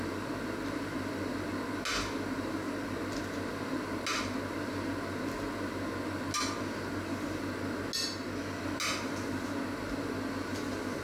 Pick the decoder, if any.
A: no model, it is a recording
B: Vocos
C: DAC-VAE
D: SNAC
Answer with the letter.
A